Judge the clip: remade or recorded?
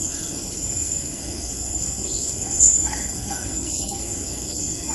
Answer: remade